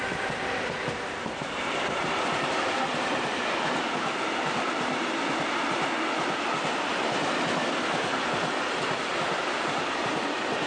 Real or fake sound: fake